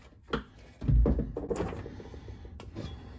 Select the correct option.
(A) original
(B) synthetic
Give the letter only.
A